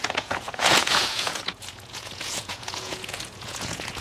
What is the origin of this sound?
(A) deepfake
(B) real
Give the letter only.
A